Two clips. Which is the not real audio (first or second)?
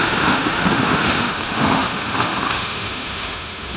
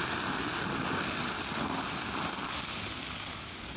first